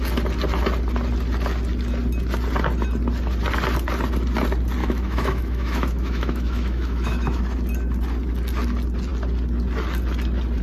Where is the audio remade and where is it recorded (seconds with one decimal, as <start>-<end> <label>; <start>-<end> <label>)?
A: 0.0-4.8 recorded; 4.8-7.4 remade; 7.4-10.6 recorded